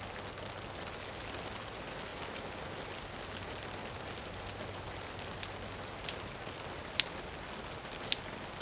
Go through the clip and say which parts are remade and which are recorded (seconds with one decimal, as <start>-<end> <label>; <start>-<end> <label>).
0.0-8.6 recorded